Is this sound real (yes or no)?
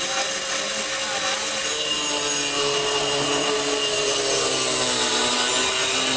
yes